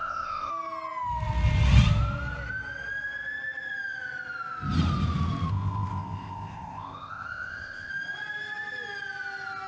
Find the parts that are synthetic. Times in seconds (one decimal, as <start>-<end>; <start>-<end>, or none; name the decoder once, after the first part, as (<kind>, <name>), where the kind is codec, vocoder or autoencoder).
0.0-0.5 (codec, ZipCodec); 5.5-7.9